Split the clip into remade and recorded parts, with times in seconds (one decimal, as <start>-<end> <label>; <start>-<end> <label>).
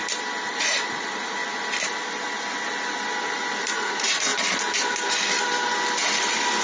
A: 0.0-0.5 recorded; 0.5-1.4 remade; 1.4-3.6 recorded; 3.6-4.3 remade; 4.3-6.6 recorded